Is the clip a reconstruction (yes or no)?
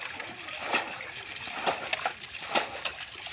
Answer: no